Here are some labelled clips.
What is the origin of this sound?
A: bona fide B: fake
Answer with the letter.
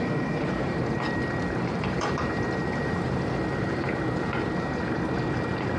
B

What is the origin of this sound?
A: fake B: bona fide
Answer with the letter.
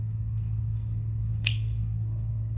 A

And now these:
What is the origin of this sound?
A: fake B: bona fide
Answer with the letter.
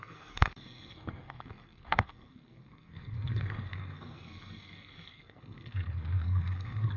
A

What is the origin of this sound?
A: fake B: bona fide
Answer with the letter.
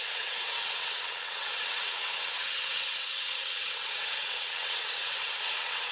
A